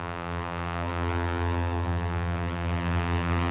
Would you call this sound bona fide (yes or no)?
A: no